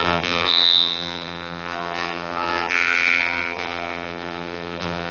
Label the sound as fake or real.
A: fake